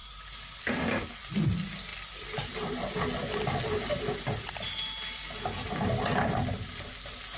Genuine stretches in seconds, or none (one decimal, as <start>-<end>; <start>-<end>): 0.0-7.4